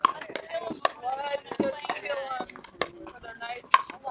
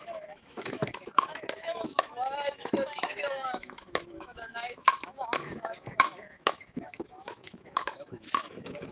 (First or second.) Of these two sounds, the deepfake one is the second